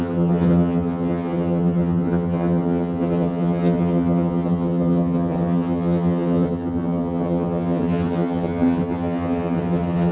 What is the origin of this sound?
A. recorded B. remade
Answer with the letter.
B